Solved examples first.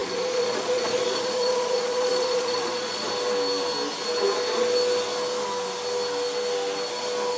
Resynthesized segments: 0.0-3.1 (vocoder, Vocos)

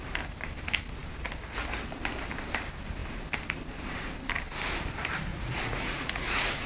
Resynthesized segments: 5.3-6.7 (vocoder, Vocos)

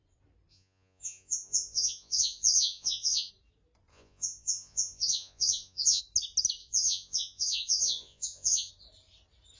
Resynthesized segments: 0.5-3.3 (vocoder, Vocos); 3.9-6.0; 6.6-8.7

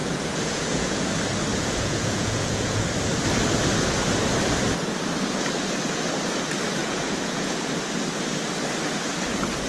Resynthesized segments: 0.0-1.1 (vocoder, Vocos); 1.5-2.8; 6.8-7.7